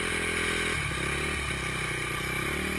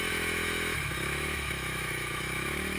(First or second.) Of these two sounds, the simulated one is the second